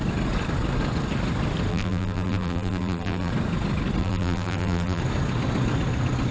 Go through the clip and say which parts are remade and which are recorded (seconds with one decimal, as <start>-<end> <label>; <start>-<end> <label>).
0.0-1.7 recorded; 1.7-3.3 remade; 3.3-4.0 recorded; 4.0-5.0 remade; 5.0-6.3 recorded